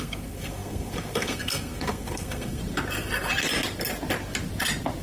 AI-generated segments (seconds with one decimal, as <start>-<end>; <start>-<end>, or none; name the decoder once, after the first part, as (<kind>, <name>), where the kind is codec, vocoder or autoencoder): 0.0-2.6 (codec, SNAC)